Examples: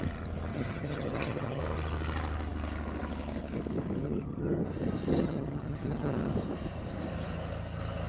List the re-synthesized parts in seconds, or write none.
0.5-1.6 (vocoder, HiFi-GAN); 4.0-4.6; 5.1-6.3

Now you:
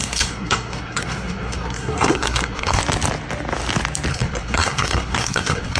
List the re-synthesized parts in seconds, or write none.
0.0-2.8 (codec, SNAC); 4.1-5.8

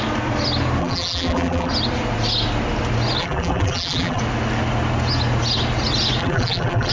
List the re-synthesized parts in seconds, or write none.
0.8-1.7 (vocoder, BigVGAN v2); 3.2-4.2; 6.2-6.9

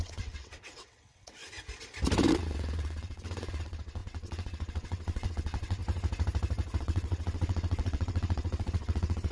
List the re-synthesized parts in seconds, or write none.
0.0-1.4 (vocoder, WaveNeXt); 2.3-5.8; 6.8-9.3

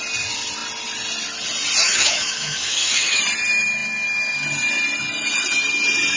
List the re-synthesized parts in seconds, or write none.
1.8-3.2 (autoencoder, DAC-VAE)

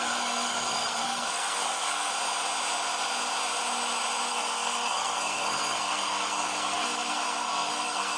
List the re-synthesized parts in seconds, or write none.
0.0-2.1 (codec, SNAC); 4.3-8.2

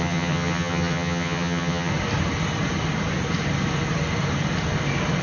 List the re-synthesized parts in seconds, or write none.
0.0-1.9 (vocoder, HiFi-GAN)